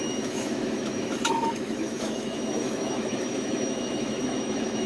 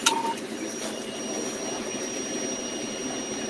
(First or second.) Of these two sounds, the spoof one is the first